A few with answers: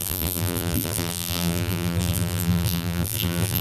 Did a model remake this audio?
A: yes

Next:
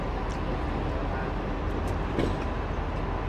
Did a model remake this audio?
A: no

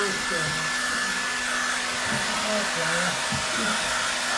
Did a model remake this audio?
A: no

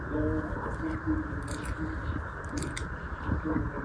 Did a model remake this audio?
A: no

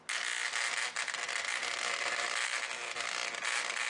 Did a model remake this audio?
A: no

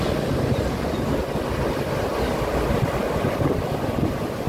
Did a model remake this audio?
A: no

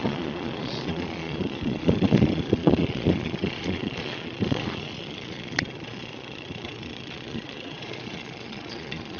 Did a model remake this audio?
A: yes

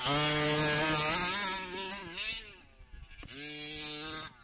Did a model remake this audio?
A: no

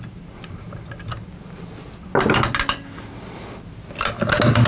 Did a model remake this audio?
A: no